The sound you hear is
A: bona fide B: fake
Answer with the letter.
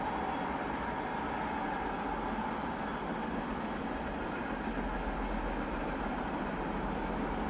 A